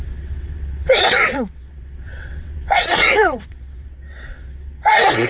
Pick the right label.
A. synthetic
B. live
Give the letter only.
A